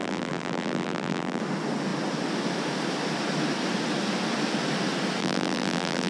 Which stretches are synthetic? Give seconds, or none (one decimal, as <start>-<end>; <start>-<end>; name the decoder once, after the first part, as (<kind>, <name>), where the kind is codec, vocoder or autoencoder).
0.0-1.4 (vocoder, BigVGAN v2); 5.2-6.1